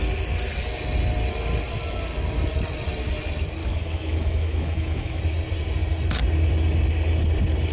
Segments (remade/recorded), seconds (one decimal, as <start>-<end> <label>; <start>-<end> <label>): 0.0-3.6 recorded; 3.6-5.2 remade; 5.2-7.7 recorded